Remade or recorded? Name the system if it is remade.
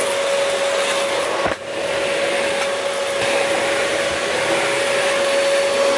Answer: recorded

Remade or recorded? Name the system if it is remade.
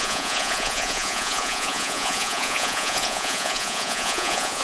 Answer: remade, vocoder, Vocos